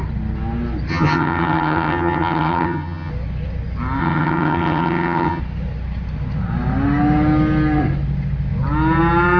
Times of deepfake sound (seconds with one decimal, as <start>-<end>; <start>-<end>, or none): 0.9-3.1; 4.0-5.4